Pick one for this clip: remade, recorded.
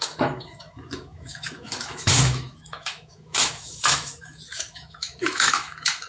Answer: remade